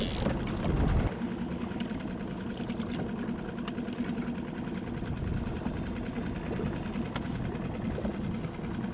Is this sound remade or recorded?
recorded